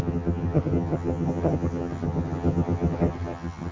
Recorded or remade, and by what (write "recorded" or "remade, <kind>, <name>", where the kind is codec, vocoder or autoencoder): remade, vocoder, HiFi-GAN